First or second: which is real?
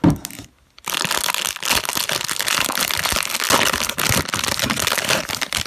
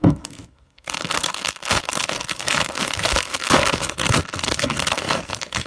first